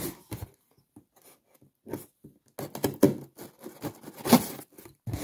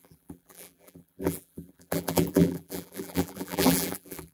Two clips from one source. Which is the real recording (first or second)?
first